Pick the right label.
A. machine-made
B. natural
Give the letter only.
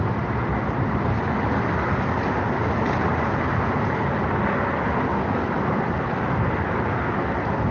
B